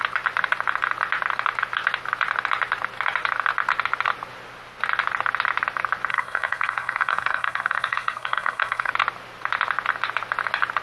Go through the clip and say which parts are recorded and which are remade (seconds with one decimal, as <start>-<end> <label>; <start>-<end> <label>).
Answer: 0.0-6.1 recorded; 6.1-8.9 remade; 8.9-10.8 recorded